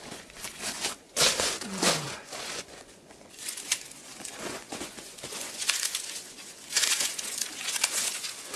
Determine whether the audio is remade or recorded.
remade